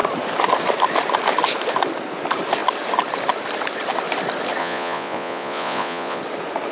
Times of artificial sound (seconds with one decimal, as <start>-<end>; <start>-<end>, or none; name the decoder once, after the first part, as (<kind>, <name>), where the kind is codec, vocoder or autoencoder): 4.6-6.2 (vocoder, Vocos)